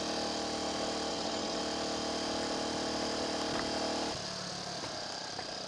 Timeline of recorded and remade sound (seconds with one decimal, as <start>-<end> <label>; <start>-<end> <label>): 0.0-1.1 recorded; 1.1-1.6 remade; 1.6-5.7 recorded